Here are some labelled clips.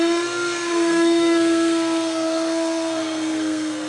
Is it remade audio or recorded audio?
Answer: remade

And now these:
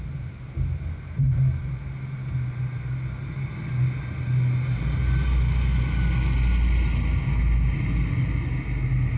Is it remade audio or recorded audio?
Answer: recorded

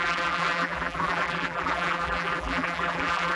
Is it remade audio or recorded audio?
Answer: remade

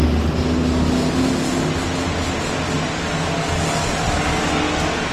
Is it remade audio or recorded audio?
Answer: recorded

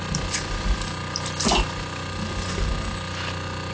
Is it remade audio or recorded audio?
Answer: recorded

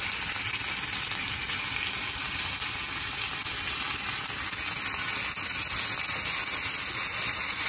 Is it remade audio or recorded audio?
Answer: recorded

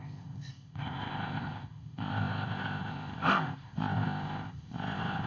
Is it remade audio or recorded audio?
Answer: remade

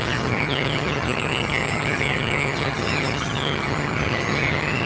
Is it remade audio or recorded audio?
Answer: remade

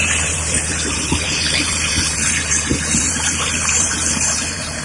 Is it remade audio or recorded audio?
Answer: remade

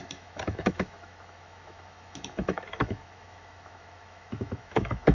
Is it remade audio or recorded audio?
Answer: remade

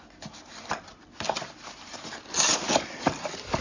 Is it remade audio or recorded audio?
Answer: recorded